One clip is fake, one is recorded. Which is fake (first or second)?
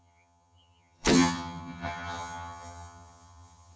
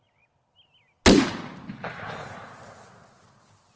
first